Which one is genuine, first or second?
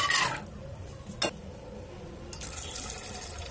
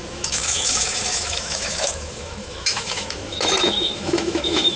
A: first